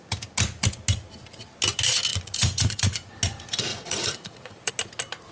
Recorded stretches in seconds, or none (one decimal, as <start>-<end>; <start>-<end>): 0.0-2.1; 3.1-3.7; 4.7-5.3